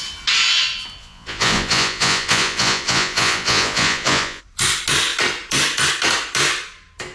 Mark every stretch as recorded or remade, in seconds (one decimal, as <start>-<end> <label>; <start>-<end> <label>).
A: 0.0-1.0 recorded; 1.0-4.4 remade; 4.4-7.1 recorded